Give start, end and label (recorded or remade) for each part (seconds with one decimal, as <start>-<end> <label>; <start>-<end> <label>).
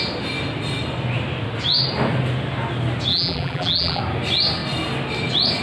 0.0-3.1 recorded; 3.1-4.0 remade; 4.0-5.6 recorded